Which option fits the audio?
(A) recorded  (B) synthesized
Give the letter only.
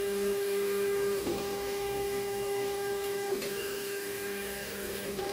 B